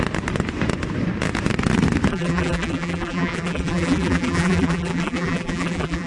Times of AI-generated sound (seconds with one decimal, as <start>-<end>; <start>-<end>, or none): 2.1-6.1